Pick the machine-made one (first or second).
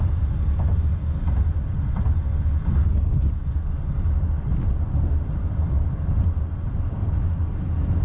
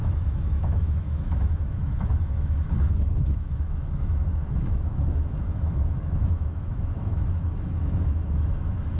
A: second